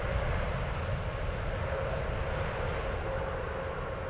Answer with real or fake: real